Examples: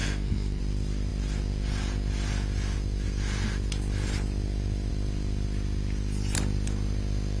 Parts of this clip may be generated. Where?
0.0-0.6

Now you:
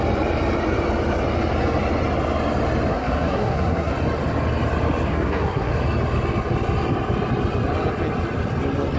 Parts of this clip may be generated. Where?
2.9-3.9; 5.1-5.7

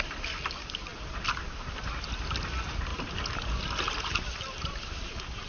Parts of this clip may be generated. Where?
none

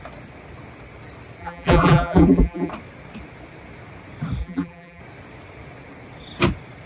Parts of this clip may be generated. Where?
1.4-2.7; 4.4-5.0

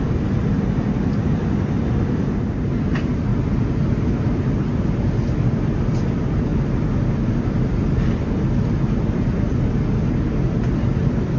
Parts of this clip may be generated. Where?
none

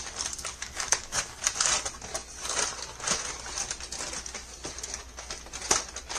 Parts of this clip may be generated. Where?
0.5-1.4

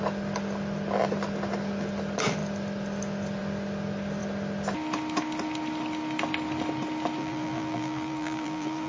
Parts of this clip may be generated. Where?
7.2-8.9